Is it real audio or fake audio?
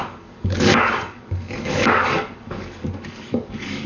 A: fake